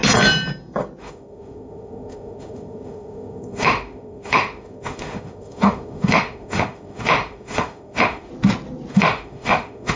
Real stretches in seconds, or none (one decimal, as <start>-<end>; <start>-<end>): 0.0-1.0; 8.3-8.9